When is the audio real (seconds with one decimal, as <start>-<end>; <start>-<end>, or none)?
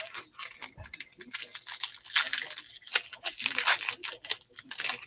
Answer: 0.0-5.1